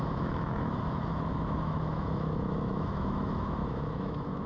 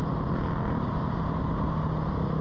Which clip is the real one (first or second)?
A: second